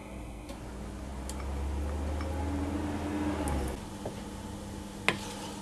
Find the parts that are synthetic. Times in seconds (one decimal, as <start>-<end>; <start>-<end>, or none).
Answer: 0.0-0.5